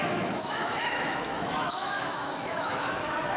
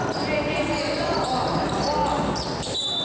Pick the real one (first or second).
second